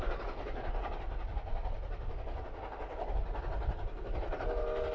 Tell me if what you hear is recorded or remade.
recorded